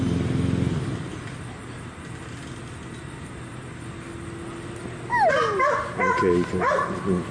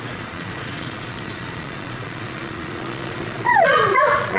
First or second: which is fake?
second